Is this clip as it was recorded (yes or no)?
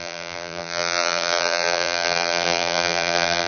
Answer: no